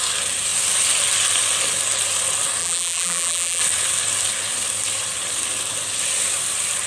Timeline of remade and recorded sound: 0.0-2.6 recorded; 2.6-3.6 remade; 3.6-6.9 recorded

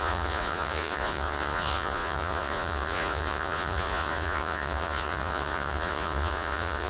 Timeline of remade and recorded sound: 0.0-6.9 remade

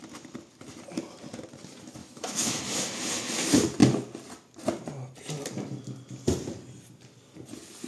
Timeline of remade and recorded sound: 0.0-2.0 recorded; 2.0-2.6 remade; 2.6-7.9 recorded

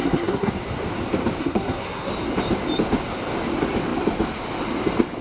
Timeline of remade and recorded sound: 0.0-0.5 remade; 0.5-1.4 recorded; 1.4-2.1 remade; 2.1-5.2 recorded

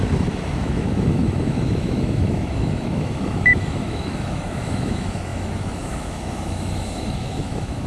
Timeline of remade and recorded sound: 0.0-7.9 remade